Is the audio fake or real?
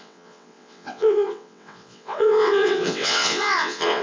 fake